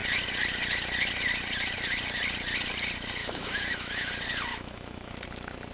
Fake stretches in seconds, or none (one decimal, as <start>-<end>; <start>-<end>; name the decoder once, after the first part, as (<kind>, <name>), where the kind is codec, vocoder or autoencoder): 3.2-4.1 (autoencoder, DAC-VAE); 4.5-5.1